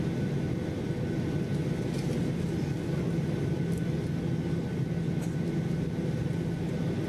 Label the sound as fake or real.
real